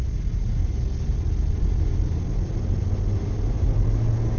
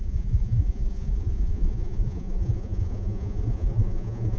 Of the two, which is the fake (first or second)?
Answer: second